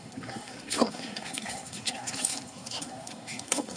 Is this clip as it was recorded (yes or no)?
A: no